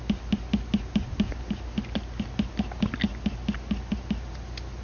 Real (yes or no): yes